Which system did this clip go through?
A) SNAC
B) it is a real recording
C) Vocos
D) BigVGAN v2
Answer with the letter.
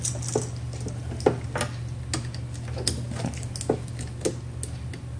B